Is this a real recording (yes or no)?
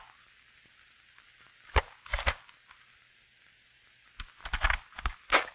yes